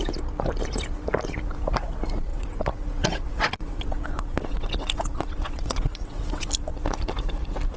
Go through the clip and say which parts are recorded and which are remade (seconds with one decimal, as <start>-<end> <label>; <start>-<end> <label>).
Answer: 0.0-2.3 recorded; 2.3-6.5 remade; 6.5-7.8 recorded